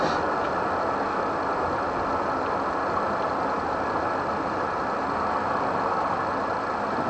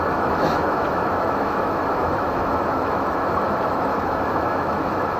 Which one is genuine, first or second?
first